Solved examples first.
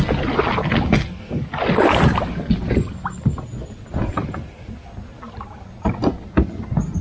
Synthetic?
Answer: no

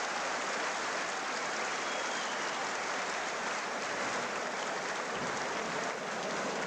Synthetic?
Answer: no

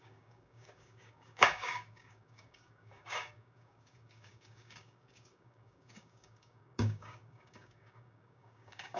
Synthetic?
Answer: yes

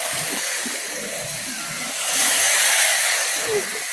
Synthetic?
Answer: yes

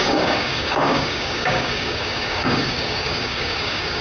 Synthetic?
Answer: yes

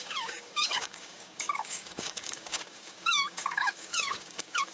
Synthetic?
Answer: yes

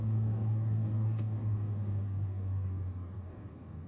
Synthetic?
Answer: yes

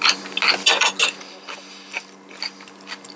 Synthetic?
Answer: no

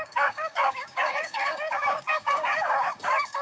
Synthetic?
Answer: yes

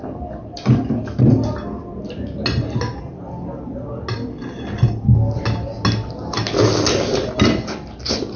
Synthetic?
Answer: no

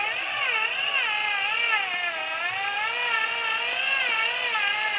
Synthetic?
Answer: no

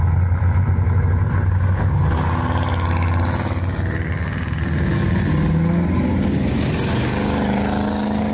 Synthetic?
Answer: no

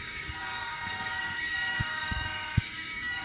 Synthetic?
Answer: yes